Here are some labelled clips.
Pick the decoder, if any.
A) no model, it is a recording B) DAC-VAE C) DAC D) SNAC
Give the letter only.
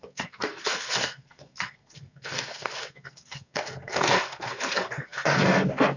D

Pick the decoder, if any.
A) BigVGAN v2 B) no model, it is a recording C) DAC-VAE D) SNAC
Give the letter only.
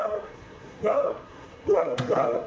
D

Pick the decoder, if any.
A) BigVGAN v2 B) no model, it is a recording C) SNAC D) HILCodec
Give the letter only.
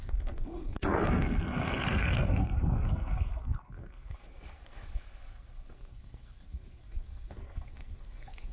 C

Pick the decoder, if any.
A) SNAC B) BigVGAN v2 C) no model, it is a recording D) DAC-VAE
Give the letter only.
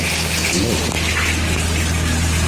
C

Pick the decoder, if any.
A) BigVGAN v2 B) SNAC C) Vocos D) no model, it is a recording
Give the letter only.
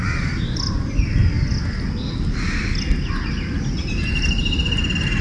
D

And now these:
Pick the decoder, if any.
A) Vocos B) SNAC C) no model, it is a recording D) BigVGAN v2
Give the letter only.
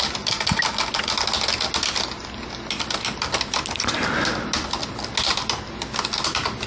C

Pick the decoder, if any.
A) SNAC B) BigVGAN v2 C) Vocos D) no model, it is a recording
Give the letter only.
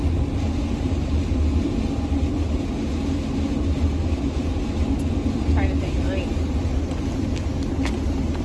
D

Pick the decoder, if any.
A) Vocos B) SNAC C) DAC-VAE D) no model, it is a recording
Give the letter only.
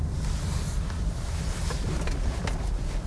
D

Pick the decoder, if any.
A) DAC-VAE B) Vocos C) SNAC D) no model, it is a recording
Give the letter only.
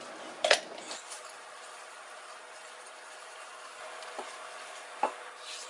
D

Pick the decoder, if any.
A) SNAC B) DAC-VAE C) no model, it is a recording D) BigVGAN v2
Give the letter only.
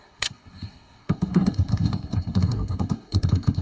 A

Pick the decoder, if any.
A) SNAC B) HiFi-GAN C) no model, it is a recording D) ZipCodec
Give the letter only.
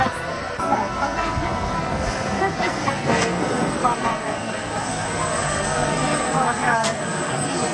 A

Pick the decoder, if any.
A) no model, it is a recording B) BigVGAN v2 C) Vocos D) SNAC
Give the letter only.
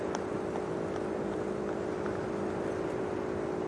A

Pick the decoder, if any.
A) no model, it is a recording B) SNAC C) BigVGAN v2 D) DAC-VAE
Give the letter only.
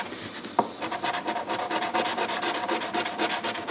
A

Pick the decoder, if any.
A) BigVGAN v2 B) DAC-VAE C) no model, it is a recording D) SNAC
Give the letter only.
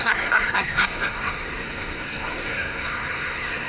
D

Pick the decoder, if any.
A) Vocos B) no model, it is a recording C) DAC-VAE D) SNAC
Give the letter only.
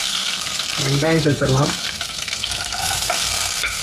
D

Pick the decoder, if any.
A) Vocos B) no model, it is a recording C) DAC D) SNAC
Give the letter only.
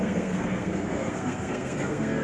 D